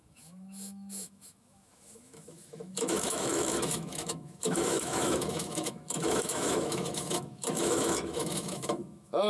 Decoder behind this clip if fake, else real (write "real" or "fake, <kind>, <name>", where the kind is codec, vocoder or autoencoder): fake, autoencoder, DAC-VAE